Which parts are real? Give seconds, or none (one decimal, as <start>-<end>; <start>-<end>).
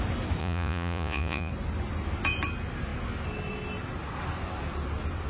0.0-0.4; 1.5-5.3